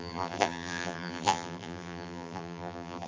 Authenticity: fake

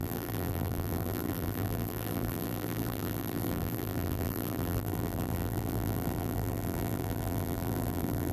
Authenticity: fake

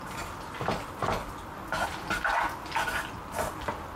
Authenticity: real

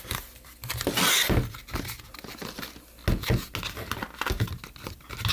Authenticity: real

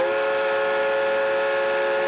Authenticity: real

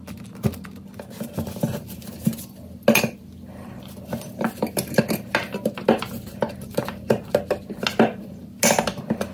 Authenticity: real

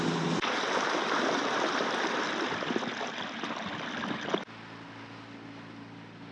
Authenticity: real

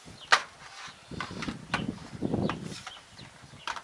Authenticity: real